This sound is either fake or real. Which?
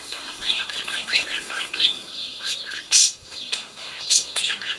fake